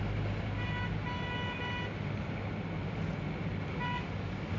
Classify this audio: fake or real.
real